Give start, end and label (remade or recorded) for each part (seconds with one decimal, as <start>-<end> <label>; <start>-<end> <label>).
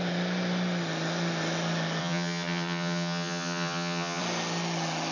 0.0-2.0 recorded; 2.0-4.2 remade; 4.2-5.1 recorded